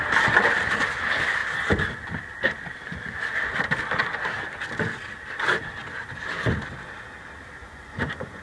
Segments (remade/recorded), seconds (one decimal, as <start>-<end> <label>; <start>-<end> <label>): 0.0-7.6 recorded; 7.6-8.4 remade